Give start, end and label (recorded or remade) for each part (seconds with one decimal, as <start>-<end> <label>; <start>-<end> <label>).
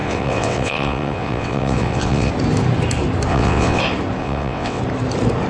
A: 0.0-2.3 remade; 2.3-3.3 recorded; 3.3-3.8 remade; 3.8-4.2 recorded; 4.2-4.8 remade; 4.8-5.5 recorded